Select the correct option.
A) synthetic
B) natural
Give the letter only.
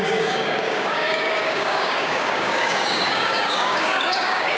A